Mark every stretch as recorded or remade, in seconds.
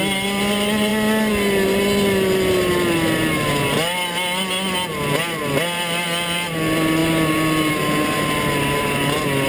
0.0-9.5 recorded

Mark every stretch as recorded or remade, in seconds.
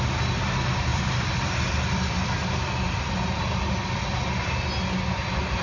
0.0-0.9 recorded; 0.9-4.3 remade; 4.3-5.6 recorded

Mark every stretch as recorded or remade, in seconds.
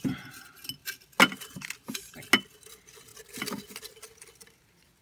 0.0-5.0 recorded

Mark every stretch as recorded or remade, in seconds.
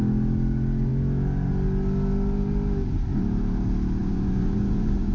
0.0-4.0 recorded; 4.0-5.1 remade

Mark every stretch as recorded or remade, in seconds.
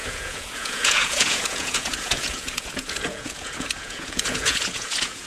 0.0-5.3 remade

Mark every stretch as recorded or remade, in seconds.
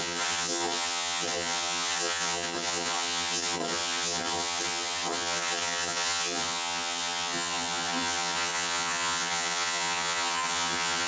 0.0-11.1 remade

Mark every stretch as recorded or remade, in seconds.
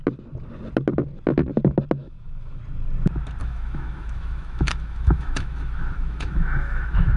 0.0-2.0 recorded; 2.0-2.6 remade; 2.6-3.4 recorded; 3.4-7.2 remade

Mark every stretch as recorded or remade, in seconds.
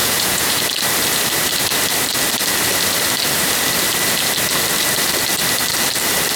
0.0-0.6 remade; 0.6-6.4 recorded